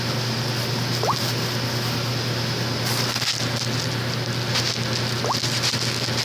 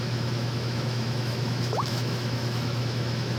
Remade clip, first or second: second